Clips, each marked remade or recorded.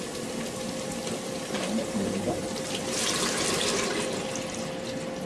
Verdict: recorded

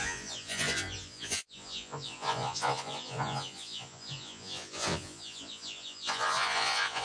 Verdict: remade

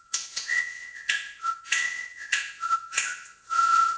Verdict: remade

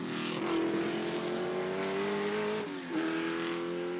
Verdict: recorded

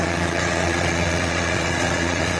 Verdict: remade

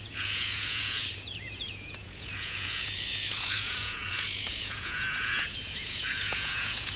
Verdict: remade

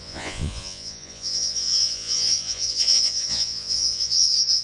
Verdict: remade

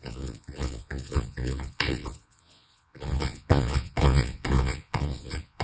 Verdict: remade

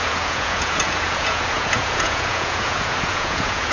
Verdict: remade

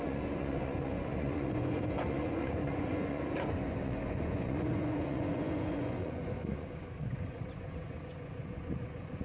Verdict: remade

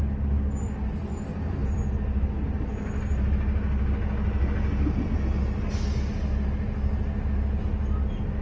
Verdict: recorded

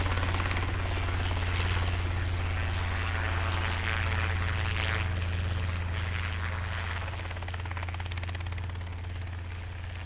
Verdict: recorded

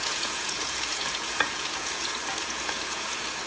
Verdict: remade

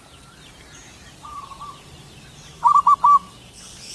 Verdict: recorded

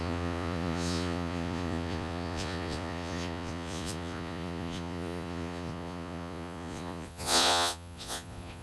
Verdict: remade